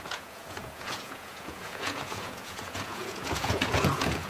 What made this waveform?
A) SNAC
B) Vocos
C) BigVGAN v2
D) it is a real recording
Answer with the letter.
B